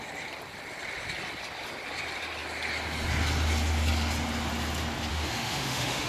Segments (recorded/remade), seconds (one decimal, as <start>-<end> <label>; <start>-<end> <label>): 0.0-5.1 recorded; 5.1-6.1 remade